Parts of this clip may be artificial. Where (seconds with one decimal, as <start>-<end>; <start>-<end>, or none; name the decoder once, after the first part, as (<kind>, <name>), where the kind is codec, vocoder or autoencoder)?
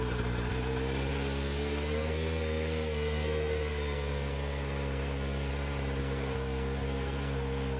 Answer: 1.1-5.5 (codec, SNAC); 6.0-7.8